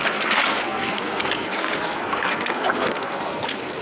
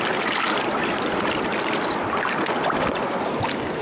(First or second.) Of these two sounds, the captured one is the second